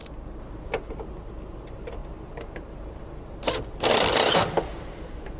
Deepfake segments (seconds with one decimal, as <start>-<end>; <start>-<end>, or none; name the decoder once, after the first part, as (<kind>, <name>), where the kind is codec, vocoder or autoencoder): none